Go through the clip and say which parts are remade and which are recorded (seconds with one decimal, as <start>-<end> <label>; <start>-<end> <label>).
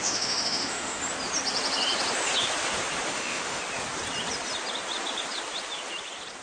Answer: 0.0-1.0 remade; 1.0-3.1 recorded; 3.1-3.6 remade; 3.6-6.4 recorded